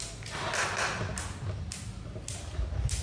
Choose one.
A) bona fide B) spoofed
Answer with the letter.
A